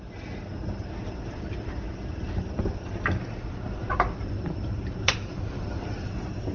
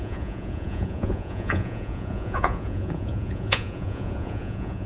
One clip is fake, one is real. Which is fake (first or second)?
second